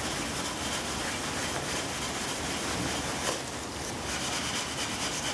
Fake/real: real